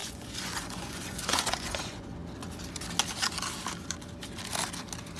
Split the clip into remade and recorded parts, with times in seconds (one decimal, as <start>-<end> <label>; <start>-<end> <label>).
0.0-2.2 remade; 2.2-5.2 recorded